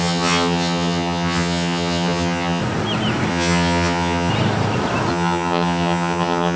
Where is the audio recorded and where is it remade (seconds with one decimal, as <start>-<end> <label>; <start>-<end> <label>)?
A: 0.0-2.6 remade; 2.6-3.3 recorded; 3.3-4.3 remade; 4.3-5.1 recorded; 5.1-6.6 remade

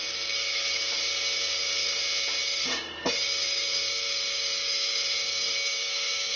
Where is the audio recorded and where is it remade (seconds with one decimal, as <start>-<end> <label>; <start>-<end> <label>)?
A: 0.0-2.0 remade; 2.0-2.4 recorded; 2.4-6.4 remade